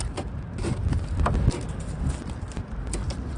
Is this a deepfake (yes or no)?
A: no